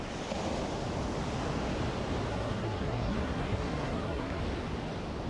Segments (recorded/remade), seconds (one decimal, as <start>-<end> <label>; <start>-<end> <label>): 0.0-2.3 recorded; 2.3-4.4 remade; 4.4-5.3 recorded